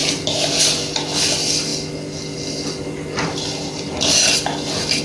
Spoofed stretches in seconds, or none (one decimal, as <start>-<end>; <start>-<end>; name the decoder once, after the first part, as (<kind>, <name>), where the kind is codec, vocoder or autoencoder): none